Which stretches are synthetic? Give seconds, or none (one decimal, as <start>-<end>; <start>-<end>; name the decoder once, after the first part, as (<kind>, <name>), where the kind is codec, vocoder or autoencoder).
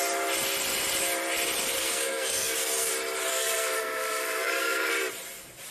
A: 1.8-2.9 (codec, SNAC); 3.3-4.9